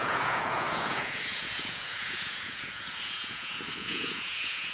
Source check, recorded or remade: remade